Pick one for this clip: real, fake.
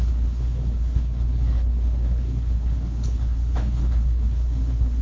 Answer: fake